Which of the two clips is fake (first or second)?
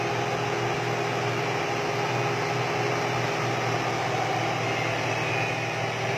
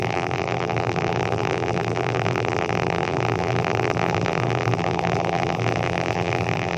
second